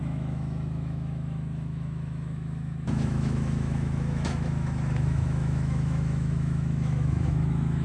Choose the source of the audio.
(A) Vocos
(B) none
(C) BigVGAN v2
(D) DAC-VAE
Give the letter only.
D